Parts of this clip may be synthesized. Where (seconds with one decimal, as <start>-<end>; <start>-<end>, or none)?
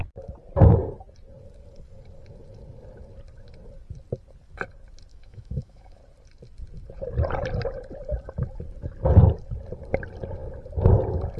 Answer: 5.1-6.0